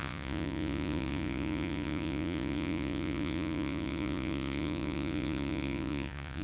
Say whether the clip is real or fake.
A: fake